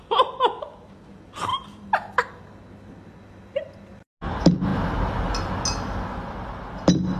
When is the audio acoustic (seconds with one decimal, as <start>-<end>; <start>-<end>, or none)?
0.0-1.5; 2.1-7.2